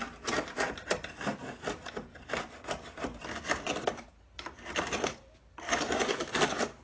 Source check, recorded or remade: recorded